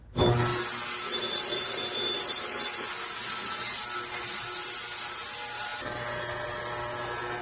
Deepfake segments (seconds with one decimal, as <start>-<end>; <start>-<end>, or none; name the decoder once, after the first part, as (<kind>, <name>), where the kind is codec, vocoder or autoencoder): none